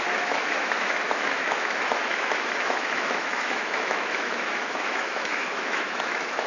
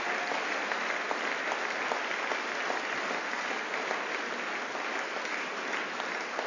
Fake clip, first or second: first